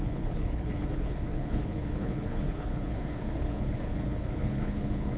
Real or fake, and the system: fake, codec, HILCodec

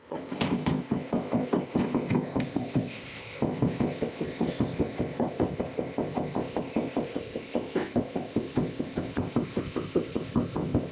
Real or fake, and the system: fake, codec, ZipCodec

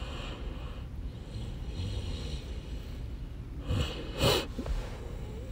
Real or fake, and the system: real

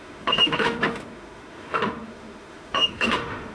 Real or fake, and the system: fake, autoencoder, DAC-VAE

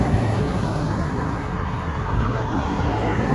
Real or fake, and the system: fake, codec, SNAC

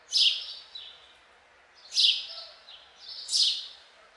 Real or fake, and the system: real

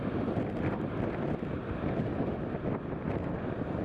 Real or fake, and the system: real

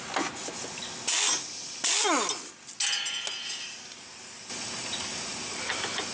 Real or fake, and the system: real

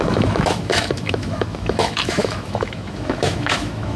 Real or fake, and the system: fake, autoencoder, DAC-VAE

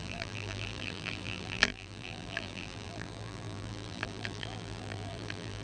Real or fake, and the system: fake, vocoder, BigVGAN v2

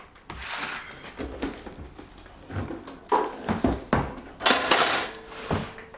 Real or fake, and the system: real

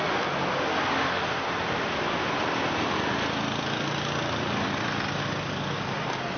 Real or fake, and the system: real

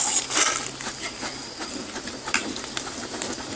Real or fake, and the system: real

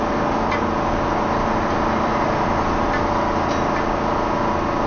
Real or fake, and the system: real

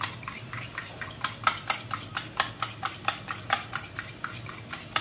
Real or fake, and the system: real